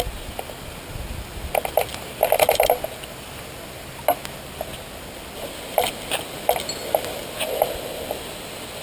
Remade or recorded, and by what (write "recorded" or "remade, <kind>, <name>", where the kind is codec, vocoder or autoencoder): recorded